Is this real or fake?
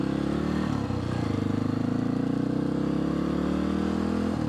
real